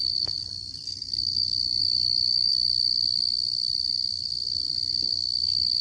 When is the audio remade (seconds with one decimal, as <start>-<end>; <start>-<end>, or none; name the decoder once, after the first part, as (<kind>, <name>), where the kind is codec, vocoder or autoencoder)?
none